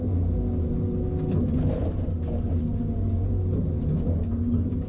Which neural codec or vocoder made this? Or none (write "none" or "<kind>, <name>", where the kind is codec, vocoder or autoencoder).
none